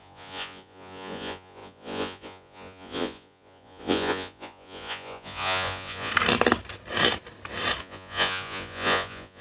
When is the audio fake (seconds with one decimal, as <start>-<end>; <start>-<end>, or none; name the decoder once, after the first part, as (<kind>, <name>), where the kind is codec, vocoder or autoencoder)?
0.0-6.1 (vocoder, Vocos); 7.8-9.4

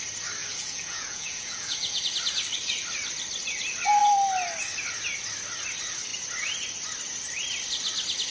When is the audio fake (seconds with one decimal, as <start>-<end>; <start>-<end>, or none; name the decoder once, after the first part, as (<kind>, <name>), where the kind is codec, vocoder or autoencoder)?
0.4-2.0 (vocoder, Vocos)